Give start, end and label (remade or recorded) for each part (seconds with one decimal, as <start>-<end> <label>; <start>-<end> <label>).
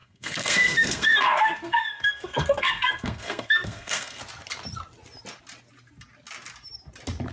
0.0-4.2 remade; 4.2-7.3 recorded